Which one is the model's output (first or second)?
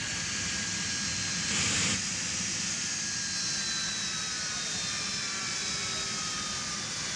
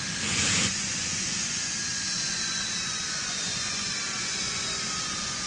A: second